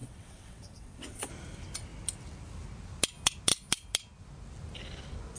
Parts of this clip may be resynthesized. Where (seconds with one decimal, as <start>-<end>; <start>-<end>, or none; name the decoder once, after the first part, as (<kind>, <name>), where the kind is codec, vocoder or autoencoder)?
0.0-1.3 (vocoder, WaveNeXt)